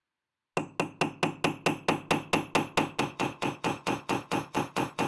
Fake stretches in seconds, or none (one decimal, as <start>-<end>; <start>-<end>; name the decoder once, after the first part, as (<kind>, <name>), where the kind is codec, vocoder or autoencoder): 3.0-5.1 (vocoder, Vocos)